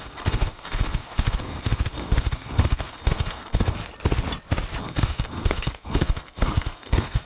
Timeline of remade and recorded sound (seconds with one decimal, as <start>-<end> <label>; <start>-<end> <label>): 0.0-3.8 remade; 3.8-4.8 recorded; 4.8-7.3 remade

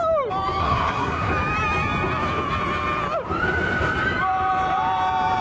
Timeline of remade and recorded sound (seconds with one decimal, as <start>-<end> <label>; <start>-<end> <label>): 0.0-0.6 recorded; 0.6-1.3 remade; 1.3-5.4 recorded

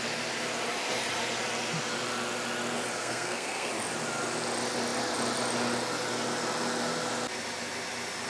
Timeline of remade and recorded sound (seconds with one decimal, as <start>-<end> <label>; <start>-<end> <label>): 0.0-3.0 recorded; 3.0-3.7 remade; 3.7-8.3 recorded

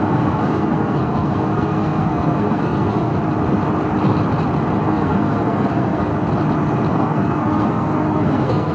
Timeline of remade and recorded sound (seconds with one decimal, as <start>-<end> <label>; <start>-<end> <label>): 0.0-3.1 remade; 3.1-4.8 recorded; 4.8-6.1 remade; 6.1-6.9 recorded; 6.9-8.7 remade

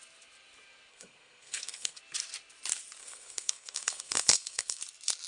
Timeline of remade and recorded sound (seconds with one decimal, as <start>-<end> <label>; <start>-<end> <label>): 0.0-0.9 recorded; 0.9-2.0 remade; 2.0-3.0 recorded; 3.0-4.8 remade; 4.8-5.3 recorded